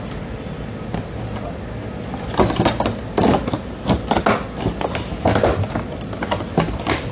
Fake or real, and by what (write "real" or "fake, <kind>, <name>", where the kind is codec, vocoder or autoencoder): real